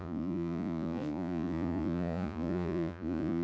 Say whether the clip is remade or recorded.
remade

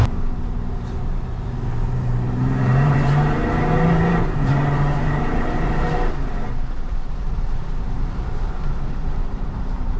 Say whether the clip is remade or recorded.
remade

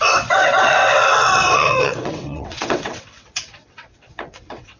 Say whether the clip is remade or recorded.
remade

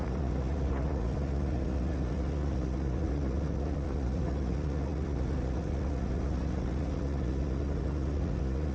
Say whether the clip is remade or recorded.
remade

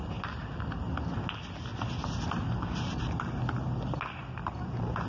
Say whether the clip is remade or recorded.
recorded